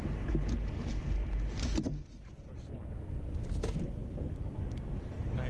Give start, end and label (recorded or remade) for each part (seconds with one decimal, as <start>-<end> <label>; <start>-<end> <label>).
0.0-0.8 recorded; 0.8-2.3 remade; 2.3-4.0 recorded; 4.0-4.6 remade; 4.6-5.5 recorded